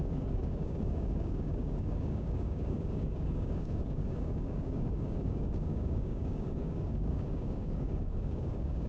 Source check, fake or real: fake